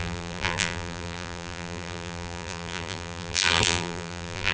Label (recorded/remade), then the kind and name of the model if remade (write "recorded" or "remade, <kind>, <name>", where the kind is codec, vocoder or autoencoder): remade, vocoder, BigVGAN v2